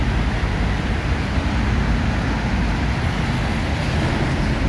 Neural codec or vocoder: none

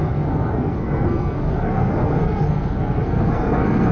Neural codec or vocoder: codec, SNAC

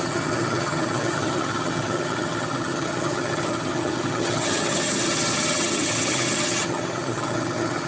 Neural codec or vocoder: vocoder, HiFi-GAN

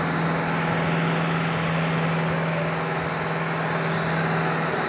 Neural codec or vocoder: none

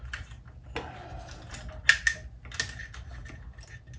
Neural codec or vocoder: none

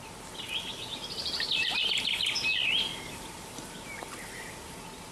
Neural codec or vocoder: none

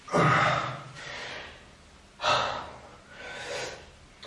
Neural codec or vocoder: none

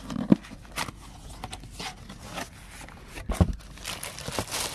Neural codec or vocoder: none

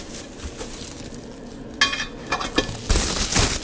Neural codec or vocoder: none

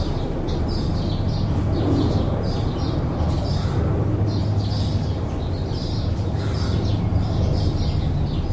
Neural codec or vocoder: none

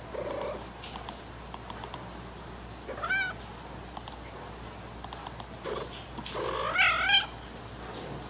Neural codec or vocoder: none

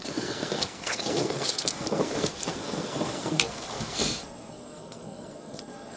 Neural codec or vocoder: codec, SNAC